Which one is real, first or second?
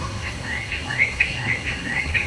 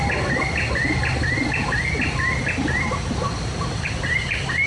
second